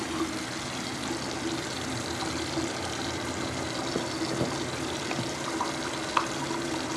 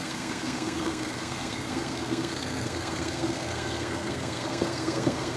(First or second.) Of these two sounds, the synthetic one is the second